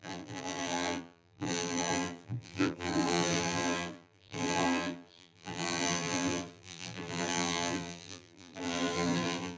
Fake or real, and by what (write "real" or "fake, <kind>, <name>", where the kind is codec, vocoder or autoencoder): fake, vocoder, BigVGAN v2